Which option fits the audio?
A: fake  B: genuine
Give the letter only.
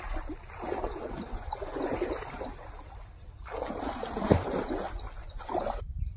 B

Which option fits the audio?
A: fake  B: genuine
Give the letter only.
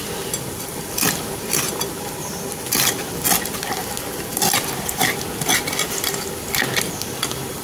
B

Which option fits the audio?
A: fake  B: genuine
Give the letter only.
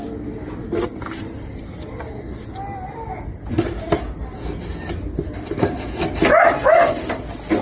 B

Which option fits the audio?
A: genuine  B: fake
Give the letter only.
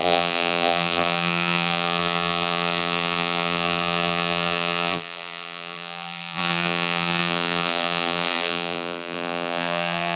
B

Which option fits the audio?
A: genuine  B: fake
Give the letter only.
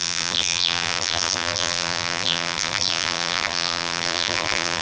B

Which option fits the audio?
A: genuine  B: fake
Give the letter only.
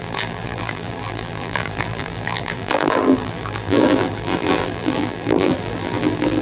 B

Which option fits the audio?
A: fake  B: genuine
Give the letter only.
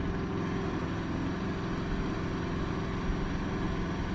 B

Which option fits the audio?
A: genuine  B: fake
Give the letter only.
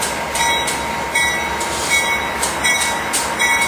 A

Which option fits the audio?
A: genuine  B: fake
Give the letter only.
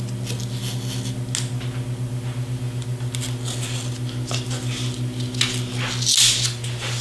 A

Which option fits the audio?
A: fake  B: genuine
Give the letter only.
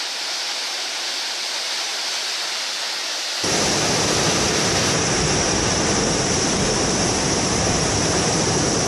A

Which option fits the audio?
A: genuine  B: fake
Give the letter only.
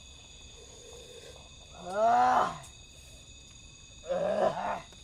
A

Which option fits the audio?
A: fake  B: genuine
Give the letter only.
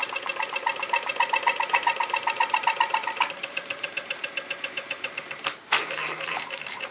A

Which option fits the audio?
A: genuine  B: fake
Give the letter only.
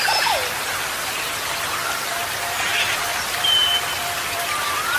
B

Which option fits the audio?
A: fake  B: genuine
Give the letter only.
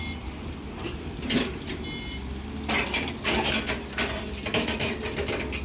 B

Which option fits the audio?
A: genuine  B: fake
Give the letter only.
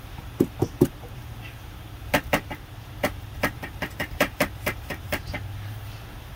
B